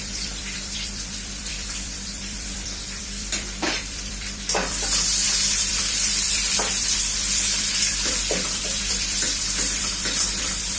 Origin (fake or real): fake